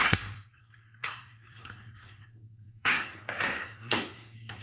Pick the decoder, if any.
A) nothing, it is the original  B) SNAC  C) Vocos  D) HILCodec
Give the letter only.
B